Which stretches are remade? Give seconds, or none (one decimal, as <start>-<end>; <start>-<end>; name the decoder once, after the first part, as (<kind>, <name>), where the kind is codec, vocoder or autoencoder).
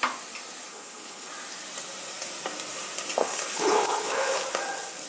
0.7-1.3 (codec, HILCodec); 3.2-4.4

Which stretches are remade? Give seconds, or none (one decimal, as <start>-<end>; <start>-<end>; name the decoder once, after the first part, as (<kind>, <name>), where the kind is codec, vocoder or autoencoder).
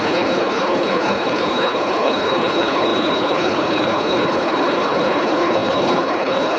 0.0-6.6 (codec, HILCodec)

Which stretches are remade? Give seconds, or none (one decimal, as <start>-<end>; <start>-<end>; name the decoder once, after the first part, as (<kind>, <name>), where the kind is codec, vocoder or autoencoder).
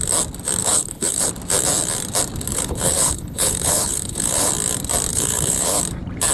0.6-1.3 (codec, HILCodec); 2.5-4.5; 5.1-5.8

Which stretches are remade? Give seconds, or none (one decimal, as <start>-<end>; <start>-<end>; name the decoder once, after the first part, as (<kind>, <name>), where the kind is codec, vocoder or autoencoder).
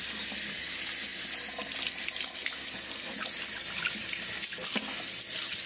none